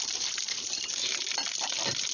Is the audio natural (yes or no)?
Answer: yes